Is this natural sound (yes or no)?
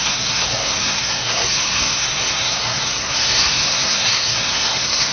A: no